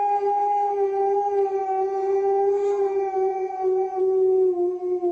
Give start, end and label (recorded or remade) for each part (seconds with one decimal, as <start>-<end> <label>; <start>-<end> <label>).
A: 0.0-3.3 recorded; 3.3-4.0 remade; 4.0-5.1 recorded